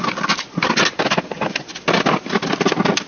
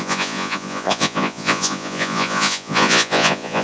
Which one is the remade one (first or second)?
second